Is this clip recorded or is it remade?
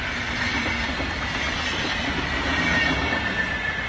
recorded